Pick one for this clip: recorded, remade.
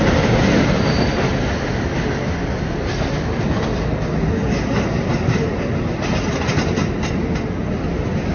recorded